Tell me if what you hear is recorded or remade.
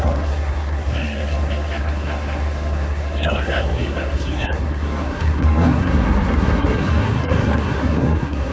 remade